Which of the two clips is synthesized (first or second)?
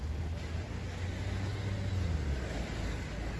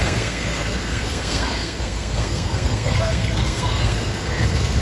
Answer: second